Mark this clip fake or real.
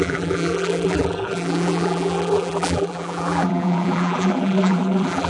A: fake